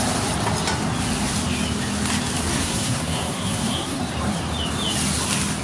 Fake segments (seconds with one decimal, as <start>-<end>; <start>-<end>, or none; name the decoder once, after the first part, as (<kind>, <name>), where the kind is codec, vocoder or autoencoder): 2.5-4.0 (codec, SNAC)